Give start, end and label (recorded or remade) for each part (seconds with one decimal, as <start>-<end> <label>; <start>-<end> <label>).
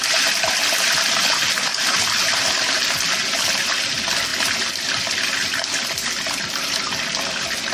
0.0-7.7 recorded